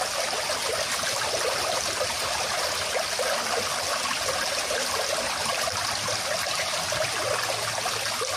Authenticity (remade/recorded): recorded